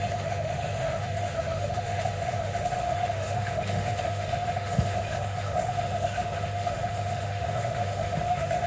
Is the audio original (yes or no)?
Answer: no